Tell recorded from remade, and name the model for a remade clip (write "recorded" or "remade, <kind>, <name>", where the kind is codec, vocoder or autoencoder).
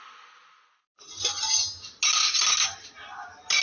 recorded